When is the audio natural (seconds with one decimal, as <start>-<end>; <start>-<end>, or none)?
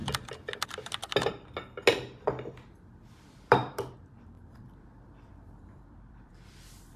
0.0-3.1